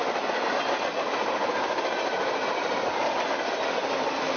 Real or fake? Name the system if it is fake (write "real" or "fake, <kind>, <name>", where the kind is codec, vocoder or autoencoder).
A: real